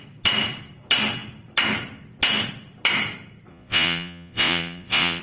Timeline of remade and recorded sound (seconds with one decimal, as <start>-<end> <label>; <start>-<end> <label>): 0.0-3.5 recorded; 3.5-5.2 remade